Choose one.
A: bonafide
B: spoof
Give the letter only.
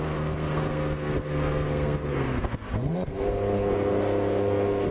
B